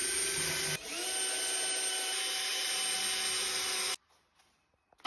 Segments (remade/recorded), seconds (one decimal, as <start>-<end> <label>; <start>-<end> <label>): 0.0-5.1 recorded